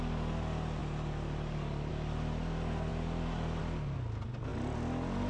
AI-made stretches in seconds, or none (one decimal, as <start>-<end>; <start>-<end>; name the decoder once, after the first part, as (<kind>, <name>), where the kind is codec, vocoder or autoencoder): none